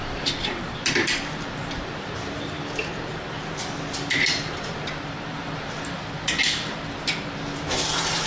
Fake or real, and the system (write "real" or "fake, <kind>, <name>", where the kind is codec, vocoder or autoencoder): fake, vocoder, BigVGAN v2